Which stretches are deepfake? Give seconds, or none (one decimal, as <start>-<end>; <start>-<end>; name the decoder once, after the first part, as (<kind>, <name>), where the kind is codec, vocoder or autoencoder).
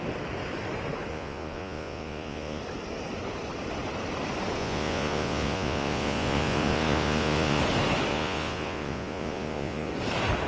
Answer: 1.1-2.6 (vocoder, Vocos); 4.6-7.6; 8.1-9.9